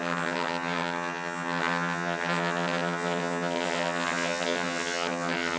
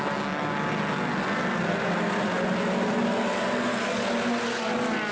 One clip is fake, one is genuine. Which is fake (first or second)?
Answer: first